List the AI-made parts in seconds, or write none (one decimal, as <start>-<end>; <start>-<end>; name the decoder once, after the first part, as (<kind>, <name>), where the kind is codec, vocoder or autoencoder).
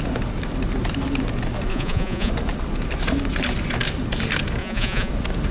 1.7-2.3 (vocoder, Vocos); 4.6-5.1